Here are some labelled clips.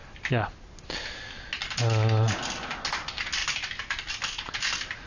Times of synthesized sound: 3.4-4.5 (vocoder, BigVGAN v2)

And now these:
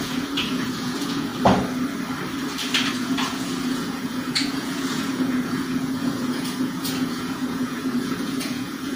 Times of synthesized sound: 0.0-1.3 (vocoder, Vocos); 2.9-9.0

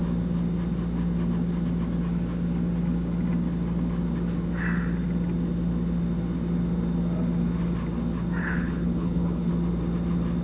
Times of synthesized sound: 8.4-9.5 (codec, HILCodec)